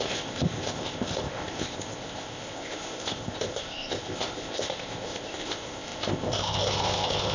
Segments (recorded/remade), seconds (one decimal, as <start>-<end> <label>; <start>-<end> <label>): 0.0-7.3 remade